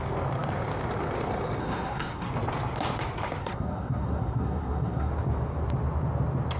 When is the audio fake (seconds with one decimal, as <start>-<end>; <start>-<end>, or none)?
1.6-2.3; 3.4-5.1